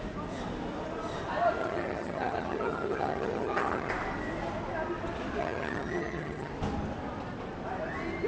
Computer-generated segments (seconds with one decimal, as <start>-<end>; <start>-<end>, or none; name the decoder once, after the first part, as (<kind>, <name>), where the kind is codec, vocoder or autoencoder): 1.6-3.9 (vocoder, HiFi-GAN); 5.4-6.5

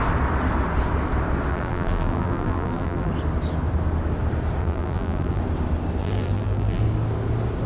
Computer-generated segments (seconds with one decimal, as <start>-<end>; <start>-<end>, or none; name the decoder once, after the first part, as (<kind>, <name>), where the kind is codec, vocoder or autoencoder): 1.5-3.1 (vocoder, BigVGAN v2); 4.6-5.4; 6.0-6.8

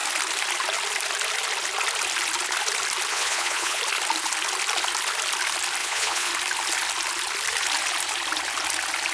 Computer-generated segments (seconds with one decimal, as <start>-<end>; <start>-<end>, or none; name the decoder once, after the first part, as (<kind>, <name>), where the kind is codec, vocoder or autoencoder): 3.1-3.8 (vocoder, Vocos); 5.8-6.3

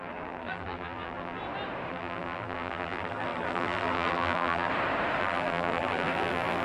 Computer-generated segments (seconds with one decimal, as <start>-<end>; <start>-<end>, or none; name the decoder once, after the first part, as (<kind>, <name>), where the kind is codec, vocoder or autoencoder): 0.0-1.4 (vocoder, BigVGAN v2); 1.9-4.7; 5.2-6.6

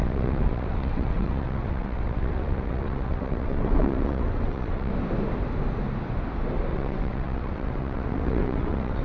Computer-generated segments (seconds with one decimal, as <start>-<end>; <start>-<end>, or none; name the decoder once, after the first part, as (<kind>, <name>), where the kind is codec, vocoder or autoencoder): 0.0-4.9 (vocoder, WaveNeXt); 6.7-9.0

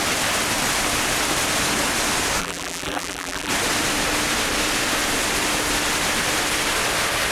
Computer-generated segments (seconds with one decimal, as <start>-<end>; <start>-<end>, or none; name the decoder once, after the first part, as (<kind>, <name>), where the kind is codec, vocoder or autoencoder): 2.4-3.5 (vocoder, BigVGAN v2)